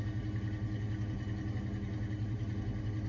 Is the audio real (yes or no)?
yes